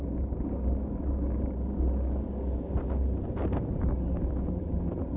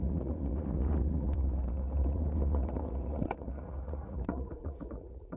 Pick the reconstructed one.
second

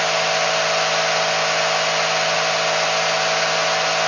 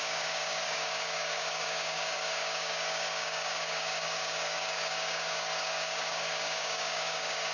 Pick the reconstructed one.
second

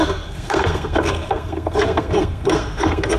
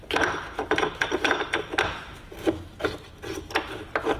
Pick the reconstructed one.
first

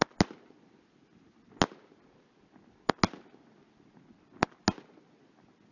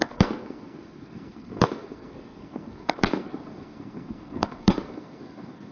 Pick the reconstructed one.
second